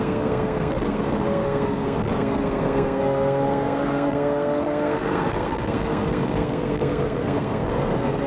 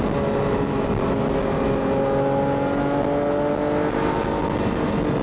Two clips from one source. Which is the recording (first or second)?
second